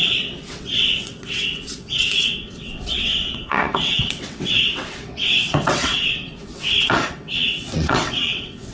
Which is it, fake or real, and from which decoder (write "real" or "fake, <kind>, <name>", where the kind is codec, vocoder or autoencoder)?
fake, vocoder, WaveNeXt